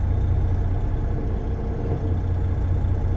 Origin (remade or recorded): recorded